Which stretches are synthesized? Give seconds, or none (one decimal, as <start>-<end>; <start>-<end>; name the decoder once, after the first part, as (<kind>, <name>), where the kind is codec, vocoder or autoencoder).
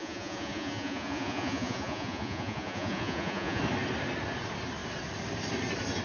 0.0-3.6 (vocoder, Vocos)